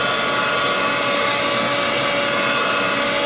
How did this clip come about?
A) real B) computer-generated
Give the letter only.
A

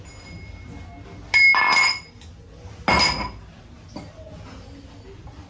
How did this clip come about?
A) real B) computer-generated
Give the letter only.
A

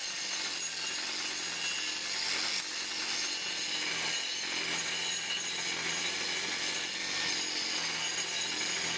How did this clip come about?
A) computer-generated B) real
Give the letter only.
B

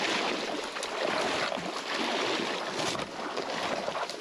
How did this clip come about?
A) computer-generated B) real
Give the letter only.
B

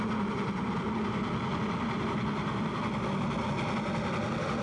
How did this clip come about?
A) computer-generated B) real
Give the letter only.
B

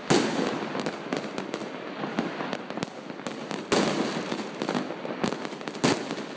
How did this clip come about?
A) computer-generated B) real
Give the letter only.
B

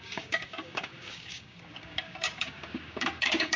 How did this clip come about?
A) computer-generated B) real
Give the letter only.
A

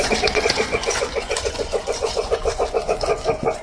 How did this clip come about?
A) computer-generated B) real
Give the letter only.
A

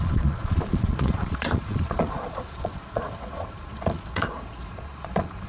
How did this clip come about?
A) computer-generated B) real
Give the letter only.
A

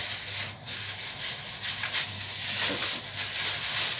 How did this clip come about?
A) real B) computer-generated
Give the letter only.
A